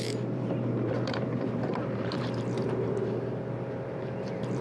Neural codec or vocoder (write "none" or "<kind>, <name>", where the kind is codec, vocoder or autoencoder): vocoder, BigVGAN v2